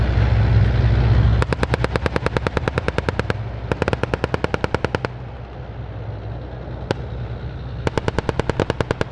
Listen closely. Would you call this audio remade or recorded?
recorded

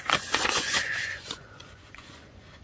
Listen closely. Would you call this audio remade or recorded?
remade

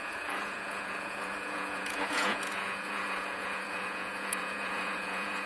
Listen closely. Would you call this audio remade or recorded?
remade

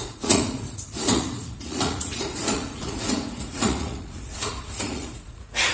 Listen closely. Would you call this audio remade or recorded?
remade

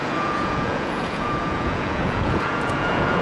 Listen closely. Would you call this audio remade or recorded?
remade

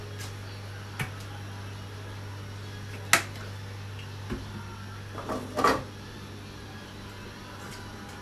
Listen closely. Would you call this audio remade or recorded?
recorded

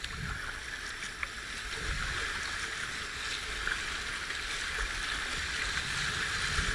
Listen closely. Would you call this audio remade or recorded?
recorded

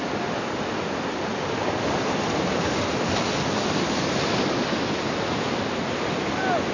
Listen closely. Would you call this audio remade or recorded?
recorded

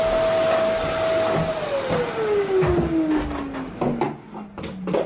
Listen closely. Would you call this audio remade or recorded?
recorded